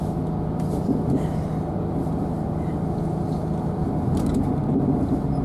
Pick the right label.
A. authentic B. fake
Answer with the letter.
A